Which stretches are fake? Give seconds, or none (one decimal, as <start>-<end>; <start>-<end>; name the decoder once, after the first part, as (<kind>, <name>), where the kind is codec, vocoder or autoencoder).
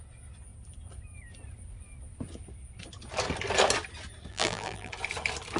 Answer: 4.3-4.9 (vocoder, BigVGAN v2)